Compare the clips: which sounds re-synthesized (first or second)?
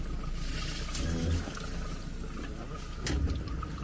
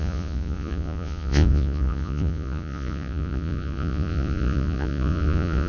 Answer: second